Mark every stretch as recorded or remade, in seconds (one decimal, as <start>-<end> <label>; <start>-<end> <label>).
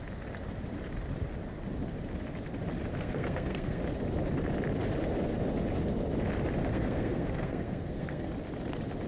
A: 0.0-2.9 recorded; 2.9-3.8 remade; 3.8-6.6 recorded; 6.6-8.3 remade; 8.3-9.1 recorded